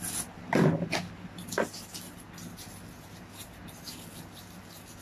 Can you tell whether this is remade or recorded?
recorded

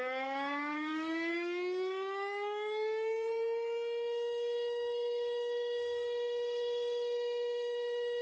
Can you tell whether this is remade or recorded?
remade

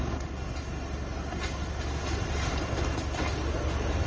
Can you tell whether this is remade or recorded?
recorded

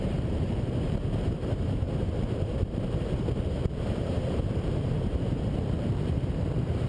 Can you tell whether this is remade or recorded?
remade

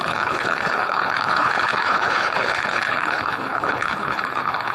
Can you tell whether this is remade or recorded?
remade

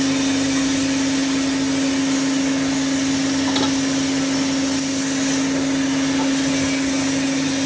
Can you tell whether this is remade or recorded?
recorded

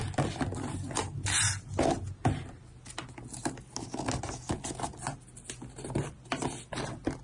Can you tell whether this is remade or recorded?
recorded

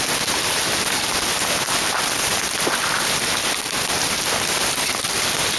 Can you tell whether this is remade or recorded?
recorded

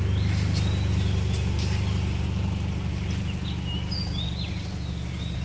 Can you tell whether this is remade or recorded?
recorded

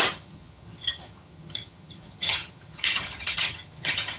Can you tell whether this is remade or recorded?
remade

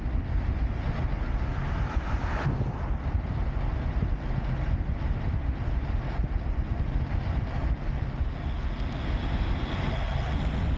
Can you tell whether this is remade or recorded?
recorded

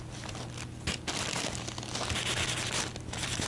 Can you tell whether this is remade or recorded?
recorded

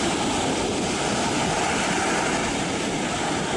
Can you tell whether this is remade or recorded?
recorded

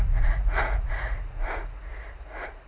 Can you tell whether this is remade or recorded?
remade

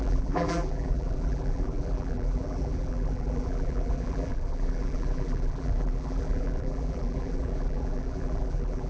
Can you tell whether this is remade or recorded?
remade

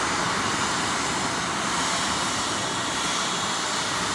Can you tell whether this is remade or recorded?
recorded